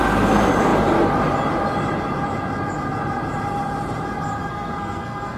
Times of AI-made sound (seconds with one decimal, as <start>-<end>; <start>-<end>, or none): 4.4-5.4